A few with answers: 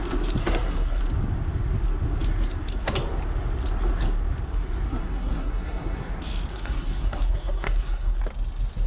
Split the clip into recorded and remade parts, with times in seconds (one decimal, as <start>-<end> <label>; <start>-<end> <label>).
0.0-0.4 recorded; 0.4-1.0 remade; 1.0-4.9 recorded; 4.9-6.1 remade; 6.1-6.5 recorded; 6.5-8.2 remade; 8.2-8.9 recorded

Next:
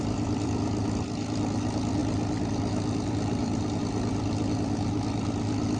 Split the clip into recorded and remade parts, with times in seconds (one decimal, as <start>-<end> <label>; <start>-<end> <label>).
0.0-5.8 recorded

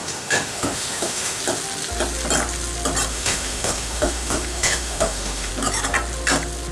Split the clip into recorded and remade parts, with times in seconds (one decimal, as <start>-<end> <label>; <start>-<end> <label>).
0.0-1.4 remade; 1.4-3.1 recorded; 3.1-5.5 remade; 5.5-6.7 recorded

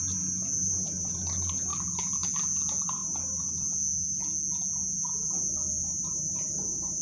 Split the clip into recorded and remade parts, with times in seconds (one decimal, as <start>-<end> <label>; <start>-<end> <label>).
0.0-7.0 recorded